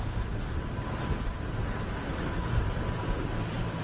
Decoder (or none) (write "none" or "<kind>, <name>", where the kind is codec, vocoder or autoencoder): vocoder, BigVGAN v2